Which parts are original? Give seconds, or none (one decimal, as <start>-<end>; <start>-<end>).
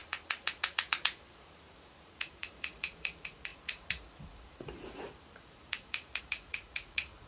none